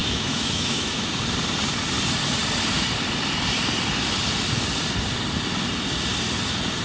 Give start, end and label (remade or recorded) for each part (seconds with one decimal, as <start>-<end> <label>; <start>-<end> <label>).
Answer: 0.0-1.1 remade; 1.1-6.8 recorded